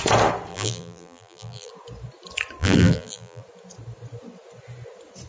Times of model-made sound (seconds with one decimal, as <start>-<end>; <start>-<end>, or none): 0.5-1.7; 2.6-3.4

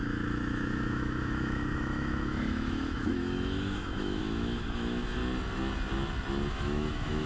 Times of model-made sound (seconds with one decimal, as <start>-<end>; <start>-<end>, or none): 0.0-5.2; 6.5-7.3